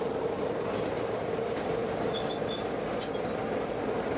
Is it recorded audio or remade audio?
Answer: recorded